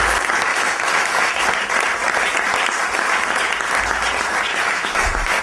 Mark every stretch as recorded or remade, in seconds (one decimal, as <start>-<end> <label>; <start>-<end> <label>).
0.0-0.5 recorded; 0.5-1.3 remade; 1.3-4.5 recorded; 4.5-5.4 remade